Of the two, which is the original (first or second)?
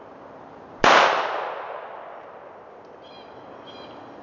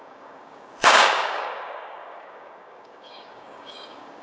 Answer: first